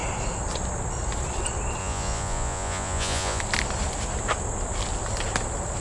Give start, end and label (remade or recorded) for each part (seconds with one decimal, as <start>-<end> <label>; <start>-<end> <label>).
0.0-1.8 recorded; 1.8-3.4 remade; 3.4-5.8 recorded